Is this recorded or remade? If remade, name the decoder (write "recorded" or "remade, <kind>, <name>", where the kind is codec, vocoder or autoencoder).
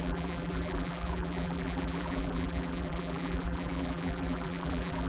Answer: remade, vocoder, BigVGAN v2